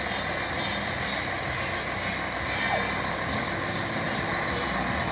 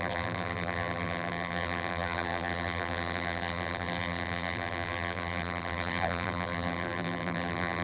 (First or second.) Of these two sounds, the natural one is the first